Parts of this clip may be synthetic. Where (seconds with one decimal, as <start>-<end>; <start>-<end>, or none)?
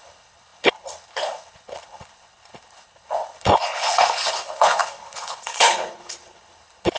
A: 0.0-7.0